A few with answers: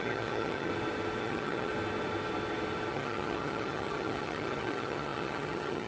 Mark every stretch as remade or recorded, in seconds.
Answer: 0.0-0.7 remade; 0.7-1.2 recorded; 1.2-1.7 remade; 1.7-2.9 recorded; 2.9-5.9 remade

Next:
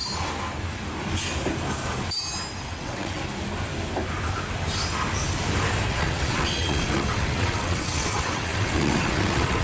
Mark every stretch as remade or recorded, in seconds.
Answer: 0.0-2.6 recorded; 2.6-3.2 remade; 3.2-5.9 recorded; 5.9-9.6 remade